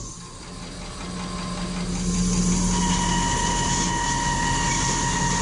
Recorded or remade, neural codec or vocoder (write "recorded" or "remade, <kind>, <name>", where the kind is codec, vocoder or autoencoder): recorded